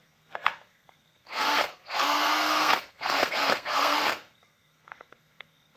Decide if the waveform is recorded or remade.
remade